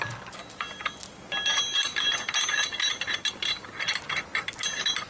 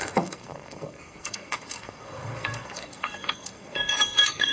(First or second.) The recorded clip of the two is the first